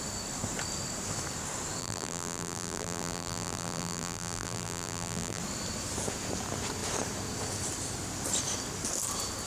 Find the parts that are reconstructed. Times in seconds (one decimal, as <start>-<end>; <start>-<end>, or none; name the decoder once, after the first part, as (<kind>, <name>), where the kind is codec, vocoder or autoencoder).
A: 1.8-5.4 (vocoder, BigVGAN v2)